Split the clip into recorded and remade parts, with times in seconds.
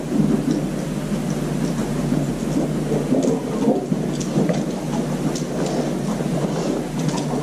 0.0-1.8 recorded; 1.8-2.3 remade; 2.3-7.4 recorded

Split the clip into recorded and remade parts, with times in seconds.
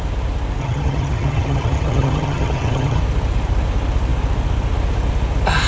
0.0-0.6 recorded; 0.6-3.0 remade; 3.0-5.7 recorded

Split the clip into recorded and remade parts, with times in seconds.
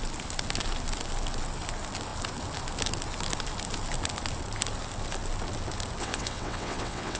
0.0-6.0 recorded; 6.0-7.2 remade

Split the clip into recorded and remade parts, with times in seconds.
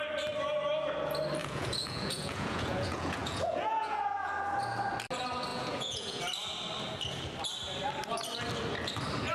0.0-1.4 recorded; 1.4-4.3 remade; 4.3-5.5 recorded; 5.5-6.2 remade; 6.2-9.3 recorded